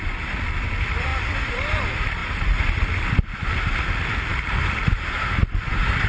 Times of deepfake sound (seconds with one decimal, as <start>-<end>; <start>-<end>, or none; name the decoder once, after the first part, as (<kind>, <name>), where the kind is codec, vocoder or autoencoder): 4.3-5.4 (vocoder, BigVGAN v2)